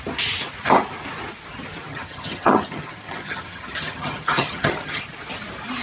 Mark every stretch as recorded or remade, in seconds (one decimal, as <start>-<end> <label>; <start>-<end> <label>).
0.0-1.9 recorded; 1.9-5.0 remade; 5.0-5.8 recorded